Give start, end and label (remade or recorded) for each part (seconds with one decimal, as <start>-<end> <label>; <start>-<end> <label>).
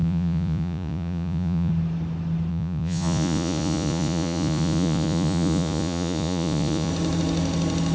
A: 0.0-1.7 remade; 1.7-2.5 recorded; 2.5-6.9 remade; 6.9-7.9 recorded